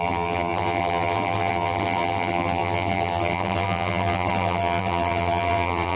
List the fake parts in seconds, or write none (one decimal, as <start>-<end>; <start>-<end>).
0.0-6.0